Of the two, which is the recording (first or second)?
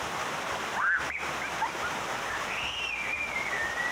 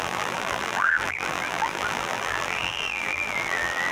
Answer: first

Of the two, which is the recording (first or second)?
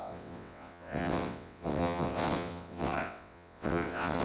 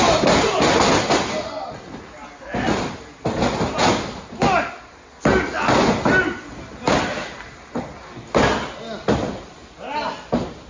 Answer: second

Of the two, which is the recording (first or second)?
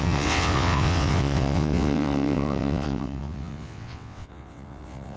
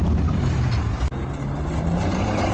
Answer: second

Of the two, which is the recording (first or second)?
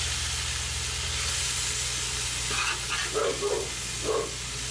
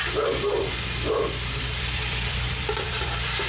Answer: first